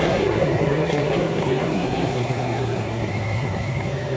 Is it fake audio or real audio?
fake